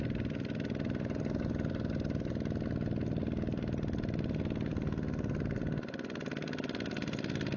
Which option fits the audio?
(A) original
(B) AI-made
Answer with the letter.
A